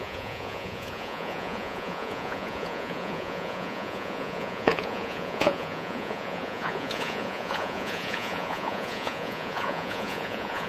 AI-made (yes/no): yes